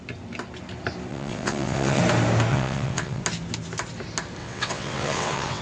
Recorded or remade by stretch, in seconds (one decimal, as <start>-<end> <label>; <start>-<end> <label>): 0.0-1.1 recorded; 1.1-2.0 remade; 2.0-2.5 recorded; 2.5-3.2 remade; 3.2-4.4 recorded; 4.4-5.6 remade